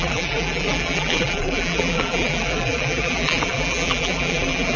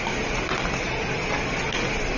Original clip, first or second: second